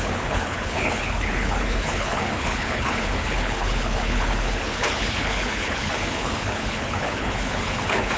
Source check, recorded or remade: remade